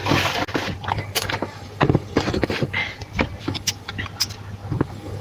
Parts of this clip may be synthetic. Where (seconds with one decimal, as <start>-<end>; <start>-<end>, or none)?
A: 0.9-2.8; 3.4-3.9; 4.7-5.2